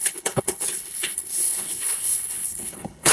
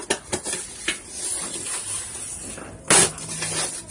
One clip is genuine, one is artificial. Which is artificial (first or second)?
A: first